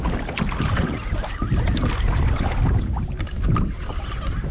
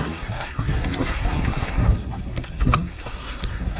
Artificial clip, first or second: second